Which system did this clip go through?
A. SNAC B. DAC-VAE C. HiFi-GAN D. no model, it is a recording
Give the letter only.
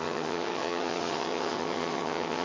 C